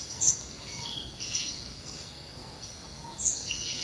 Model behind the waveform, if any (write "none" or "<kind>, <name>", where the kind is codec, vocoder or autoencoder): codec, SNAC